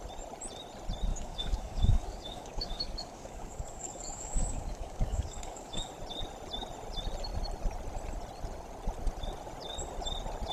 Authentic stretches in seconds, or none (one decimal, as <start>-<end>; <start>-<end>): 0.0-1.1; 5.9-10.5

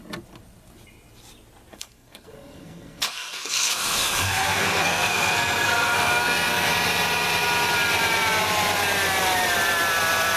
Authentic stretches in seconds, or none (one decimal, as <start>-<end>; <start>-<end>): 0.0-1.7; 6.7-10.4

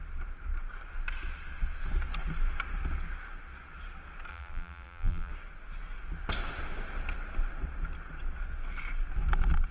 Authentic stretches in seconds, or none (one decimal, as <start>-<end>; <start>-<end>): 0.0-4.3; 5.3-9.7